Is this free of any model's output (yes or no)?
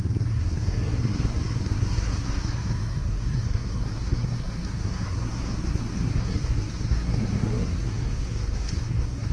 no